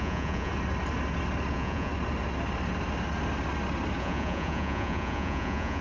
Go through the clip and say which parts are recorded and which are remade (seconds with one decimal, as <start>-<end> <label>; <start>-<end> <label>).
0.0-0.5 remade; 0.5-1.5 recorded; 1.5-1.9 remade; 1.9-4.0 recorded; 4.0-5.8 remade